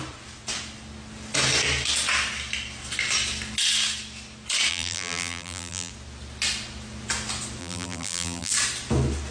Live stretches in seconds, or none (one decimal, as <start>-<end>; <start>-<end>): 0.0-4.7; 5.9-7.6; 8.5-9.3